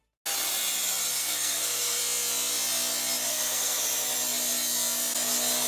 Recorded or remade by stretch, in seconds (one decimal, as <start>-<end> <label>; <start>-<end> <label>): 0.0-1.2 recorded; 1.2-2.0 remade; 2.0-3.3 recorded; 3.3-3.8 remade; 3.8-5.7 recorded